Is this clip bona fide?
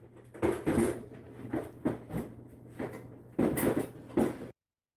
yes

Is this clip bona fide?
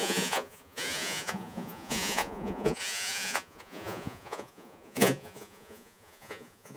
no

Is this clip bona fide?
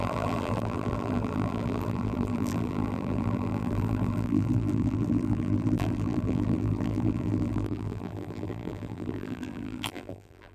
no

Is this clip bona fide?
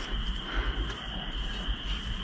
yes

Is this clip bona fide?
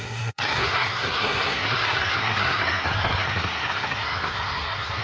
no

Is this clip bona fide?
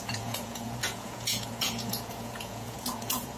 no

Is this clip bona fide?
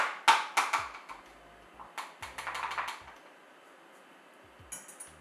yes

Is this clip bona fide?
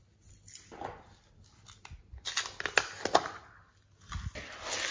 yes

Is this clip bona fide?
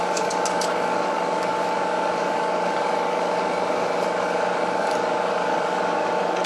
no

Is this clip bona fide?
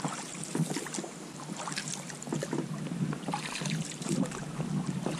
yes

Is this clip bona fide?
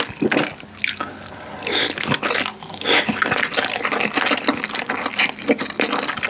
yes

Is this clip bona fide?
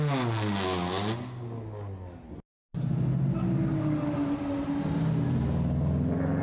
yes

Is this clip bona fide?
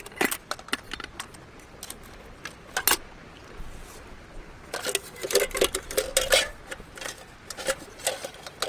yes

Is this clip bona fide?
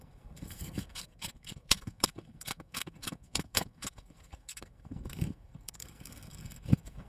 no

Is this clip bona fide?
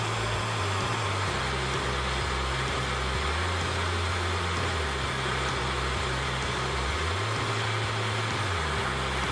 yes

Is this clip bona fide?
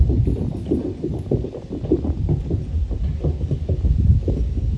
yes